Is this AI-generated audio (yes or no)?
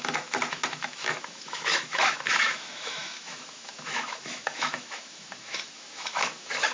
yes